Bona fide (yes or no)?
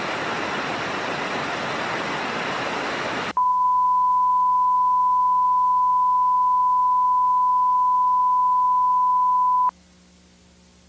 yes